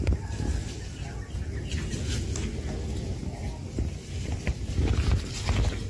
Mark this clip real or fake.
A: real